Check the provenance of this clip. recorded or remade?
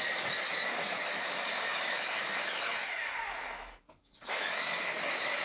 remade